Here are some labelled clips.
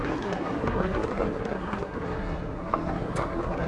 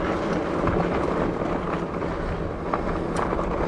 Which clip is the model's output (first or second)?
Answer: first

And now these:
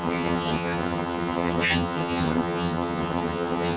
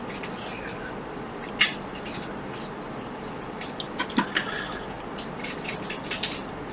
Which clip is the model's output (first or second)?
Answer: first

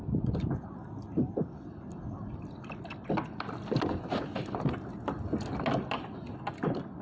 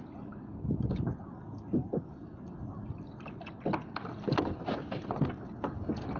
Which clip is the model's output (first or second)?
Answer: first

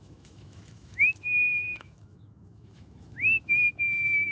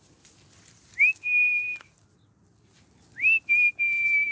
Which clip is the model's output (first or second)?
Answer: first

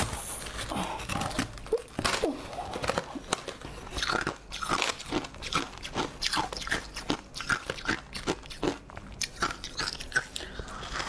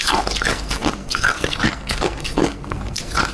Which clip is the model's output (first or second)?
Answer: second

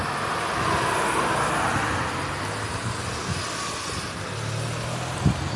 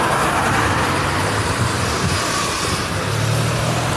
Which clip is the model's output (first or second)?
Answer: second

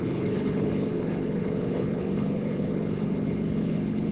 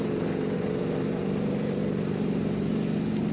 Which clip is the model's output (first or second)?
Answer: first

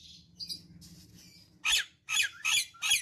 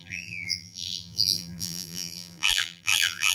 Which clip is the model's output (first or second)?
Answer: second